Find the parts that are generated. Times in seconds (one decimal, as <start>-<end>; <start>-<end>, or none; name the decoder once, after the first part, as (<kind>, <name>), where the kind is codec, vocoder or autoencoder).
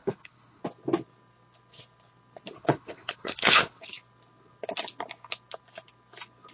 0.0-0.6 (codec, HILCodec); 2.5-3.8